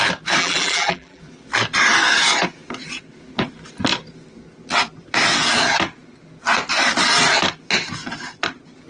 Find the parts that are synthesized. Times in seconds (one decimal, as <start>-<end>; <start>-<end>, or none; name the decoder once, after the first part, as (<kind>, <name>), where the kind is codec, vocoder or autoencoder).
0.4-1.2 (vocoder, BigVGAN v2)